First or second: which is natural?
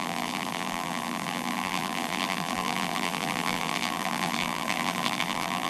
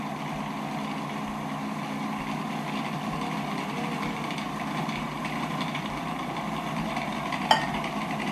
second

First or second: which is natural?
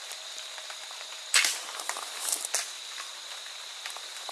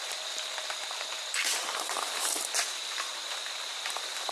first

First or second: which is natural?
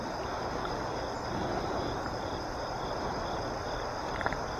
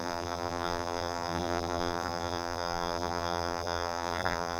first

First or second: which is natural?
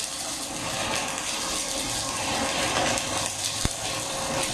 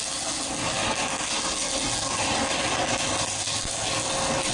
second